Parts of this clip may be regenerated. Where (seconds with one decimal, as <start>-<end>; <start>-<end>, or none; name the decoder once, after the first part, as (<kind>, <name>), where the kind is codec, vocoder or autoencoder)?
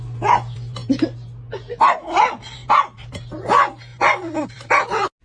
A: none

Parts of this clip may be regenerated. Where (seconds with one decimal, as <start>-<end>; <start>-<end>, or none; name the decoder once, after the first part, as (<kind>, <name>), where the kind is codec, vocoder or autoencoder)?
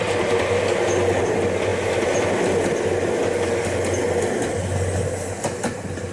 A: none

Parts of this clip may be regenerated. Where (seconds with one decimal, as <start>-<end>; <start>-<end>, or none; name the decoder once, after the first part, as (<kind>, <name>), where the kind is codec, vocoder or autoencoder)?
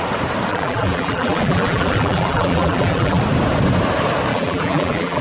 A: 0.5-3.2 (vocoder, BigVGAN v2); 4.3-5.2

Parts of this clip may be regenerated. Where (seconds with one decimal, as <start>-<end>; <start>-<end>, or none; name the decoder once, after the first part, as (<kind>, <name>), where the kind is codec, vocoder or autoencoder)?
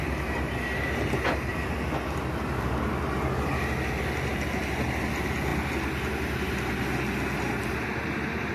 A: none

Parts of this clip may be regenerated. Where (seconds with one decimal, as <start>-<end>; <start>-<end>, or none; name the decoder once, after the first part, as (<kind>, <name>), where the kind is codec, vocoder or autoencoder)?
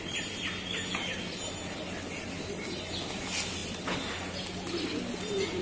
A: none